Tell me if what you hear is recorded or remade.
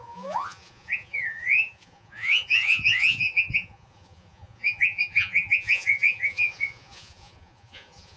remade